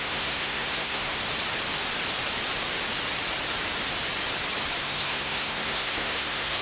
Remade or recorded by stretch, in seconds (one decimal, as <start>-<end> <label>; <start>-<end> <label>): 0.0-1.2 remade; 1.2-4.8 recorded; 4.8-6.6 remade